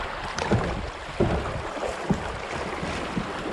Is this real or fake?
real